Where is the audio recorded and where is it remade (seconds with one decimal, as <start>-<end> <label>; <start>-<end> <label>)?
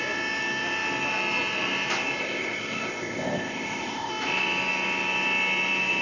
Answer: 0.0-2.2 recorded; 2.2-4.1 remade; 4.1-6.0 recorded